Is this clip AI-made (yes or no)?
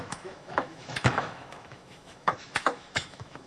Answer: yes